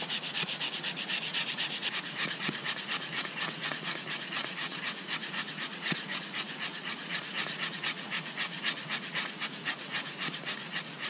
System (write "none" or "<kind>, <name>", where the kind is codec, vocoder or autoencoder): vocoder, Vocos